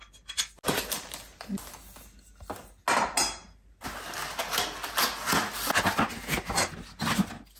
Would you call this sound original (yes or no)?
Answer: yes